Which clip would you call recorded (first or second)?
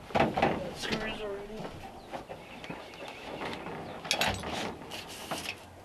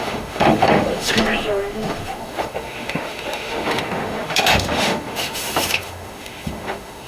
first